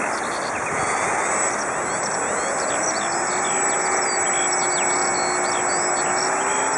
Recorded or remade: recorded